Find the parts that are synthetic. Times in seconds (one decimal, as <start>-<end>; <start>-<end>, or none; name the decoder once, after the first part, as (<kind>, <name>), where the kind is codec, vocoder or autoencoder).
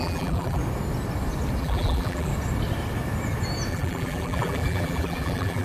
0.0-0.6 (vocoder, BigVGAN v2); 1.6-2.3; 3.7-5.6